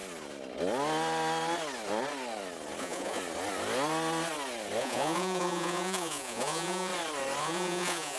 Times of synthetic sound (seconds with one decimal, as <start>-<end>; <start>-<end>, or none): 2.8-3.2; 4.8-6.9; 7.4-8.2